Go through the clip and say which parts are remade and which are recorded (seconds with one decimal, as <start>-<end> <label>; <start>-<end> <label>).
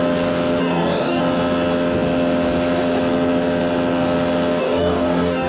0.0-0.6 recorded; 0.6-1.2 remade; 1.2-4.6 recorded; 4.6-5.5 remade